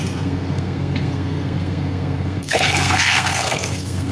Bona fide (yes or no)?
no